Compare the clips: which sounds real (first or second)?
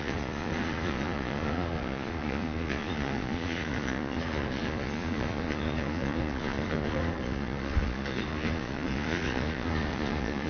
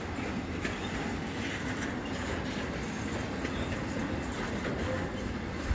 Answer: second